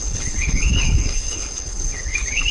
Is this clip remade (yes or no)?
yes